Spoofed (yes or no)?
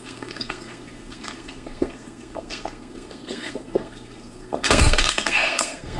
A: yes